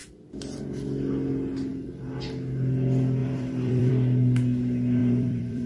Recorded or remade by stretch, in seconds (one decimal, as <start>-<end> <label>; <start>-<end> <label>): 0.0-1.7 recorded; 1.7-2.2 remade; 2.2-3.2 recorded; 3.2-3.9 remade; 3.9-5.0 recorded; 5.0-5.7 remade